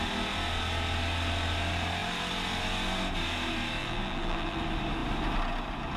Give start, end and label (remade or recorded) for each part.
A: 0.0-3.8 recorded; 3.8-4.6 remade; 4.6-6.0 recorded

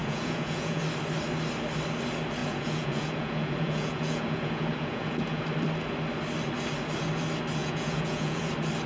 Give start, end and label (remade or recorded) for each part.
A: 0.0-0.8 remade; 0.8-2.4 recorded; 2.4-5.4 remade; 5.4-7.6 recorded; 7.6-8.5 remade; 8.5-8.9 recorded